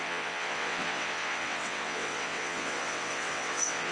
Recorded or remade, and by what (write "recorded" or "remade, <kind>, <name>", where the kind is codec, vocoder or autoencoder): remade, vocoder, WaveNeXt